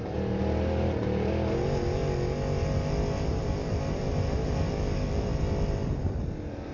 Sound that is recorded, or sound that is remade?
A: recorded